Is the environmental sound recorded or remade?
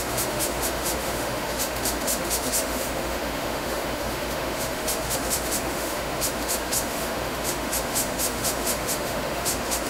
remade